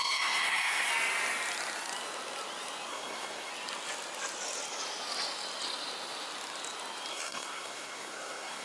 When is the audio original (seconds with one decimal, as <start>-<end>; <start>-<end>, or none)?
0.9-2.9; 3.5-7.1